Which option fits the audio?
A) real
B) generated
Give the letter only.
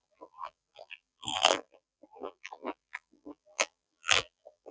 B